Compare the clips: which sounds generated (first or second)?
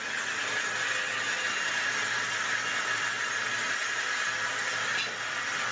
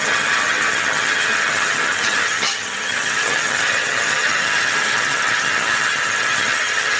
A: second